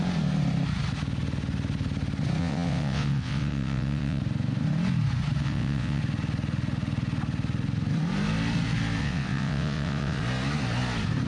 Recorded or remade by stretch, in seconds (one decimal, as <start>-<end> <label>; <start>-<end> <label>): 0.0-2.4 recorded; 2.4-4.2 remade; 4.2-5.4 recorded; 5.4-6.0 remade; 6.0-9.0 recorded; 9.0-10.2 remade; 10.2-11.3 recorded